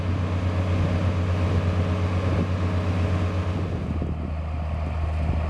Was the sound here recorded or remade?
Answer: recorded